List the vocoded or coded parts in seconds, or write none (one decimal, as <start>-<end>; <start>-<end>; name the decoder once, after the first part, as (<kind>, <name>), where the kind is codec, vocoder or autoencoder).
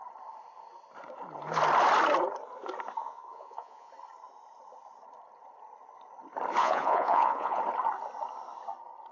3.0-3.9 (vocoder, Vocos); 6.6-7.6